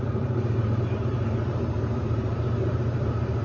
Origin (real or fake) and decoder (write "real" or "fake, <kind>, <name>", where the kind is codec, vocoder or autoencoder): fake, vocoder, BigVGAN v2